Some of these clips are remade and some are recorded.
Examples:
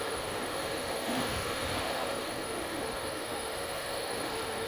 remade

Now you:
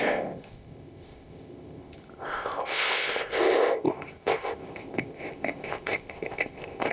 remade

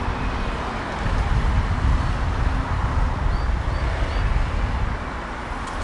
recorded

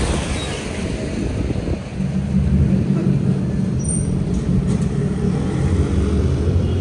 recorded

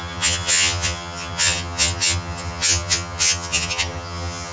remade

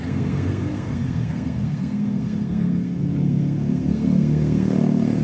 remade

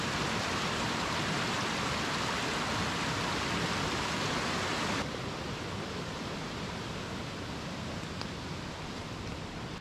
recorded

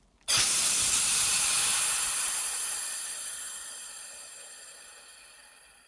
remade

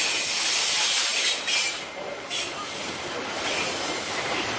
recorded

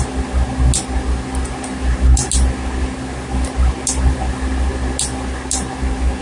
recorded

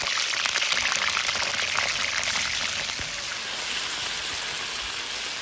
recorded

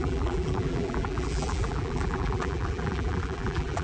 remade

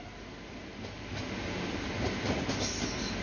recorded